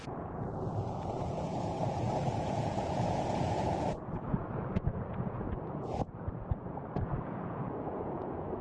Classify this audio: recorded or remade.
remade